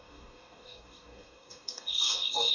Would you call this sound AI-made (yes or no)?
yes